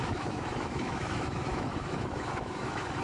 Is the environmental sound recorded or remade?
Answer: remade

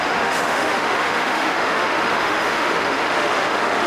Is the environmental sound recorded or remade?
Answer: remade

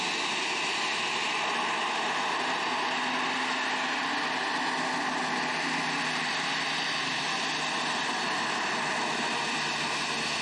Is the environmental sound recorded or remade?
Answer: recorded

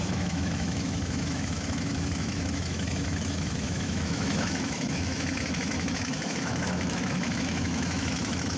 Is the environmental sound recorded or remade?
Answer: remade